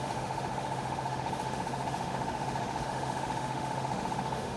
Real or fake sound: fake